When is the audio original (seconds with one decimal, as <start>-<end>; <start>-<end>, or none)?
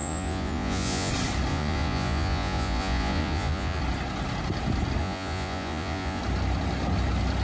1.1-1.5; 3.8-5.0; 6.2-7.4